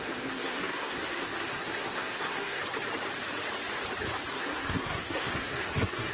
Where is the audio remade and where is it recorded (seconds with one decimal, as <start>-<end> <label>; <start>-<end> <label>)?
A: 0.0-2.6 remade; 2.6-4.3 recorded; 4.3-6.1 remade